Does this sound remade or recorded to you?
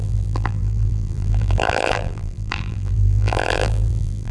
remade